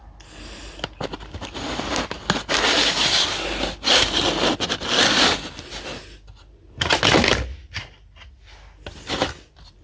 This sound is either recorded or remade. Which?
recorded